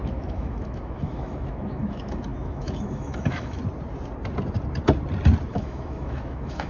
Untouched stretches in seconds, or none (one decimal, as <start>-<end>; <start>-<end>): 3.6-5.5